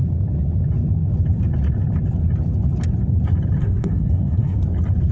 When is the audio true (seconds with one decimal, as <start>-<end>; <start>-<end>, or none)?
0.0-3.6; 4.6-5.1